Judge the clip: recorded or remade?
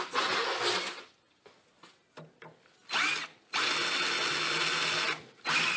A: recorded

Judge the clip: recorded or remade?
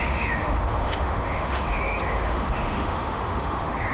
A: remade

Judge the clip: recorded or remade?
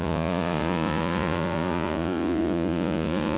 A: remade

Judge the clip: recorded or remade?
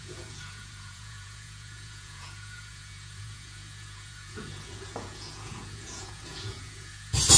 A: remade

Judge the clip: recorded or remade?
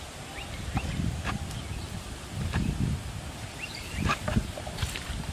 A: remade